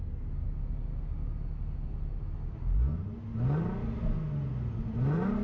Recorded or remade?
recorded